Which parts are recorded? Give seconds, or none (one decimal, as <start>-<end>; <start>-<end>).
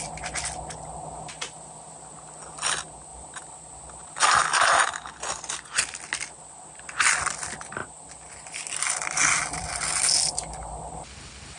0.0-11.6